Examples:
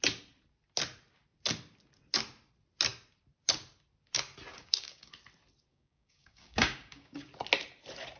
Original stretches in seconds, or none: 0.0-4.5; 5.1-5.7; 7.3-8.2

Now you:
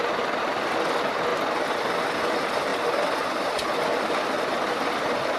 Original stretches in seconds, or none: 0.0-5.4